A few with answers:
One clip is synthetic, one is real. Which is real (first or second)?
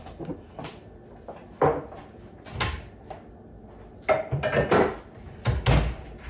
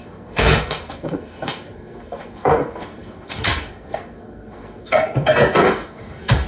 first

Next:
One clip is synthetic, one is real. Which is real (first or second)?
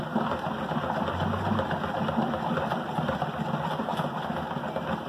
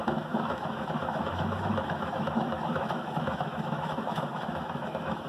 first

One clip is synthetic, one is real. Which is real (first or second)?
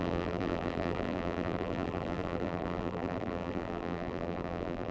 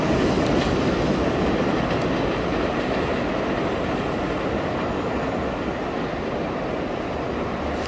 second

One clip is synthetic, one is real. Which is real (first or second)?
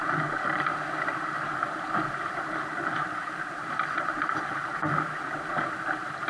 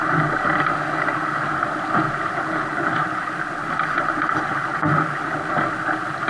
second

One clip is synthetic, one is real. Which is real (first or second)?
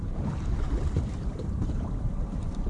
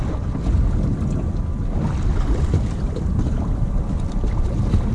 second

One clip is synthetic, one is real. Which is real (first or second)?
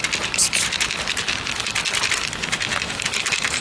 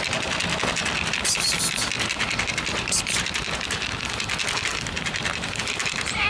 first